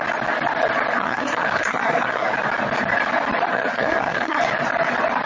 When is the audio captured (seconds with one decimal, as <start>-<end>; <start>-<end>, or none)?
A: 0.0-1.0; 2.3-3.5; 4.4-5.3